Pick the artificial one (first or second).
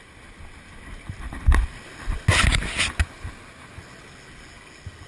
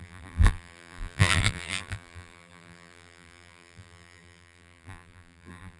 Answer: second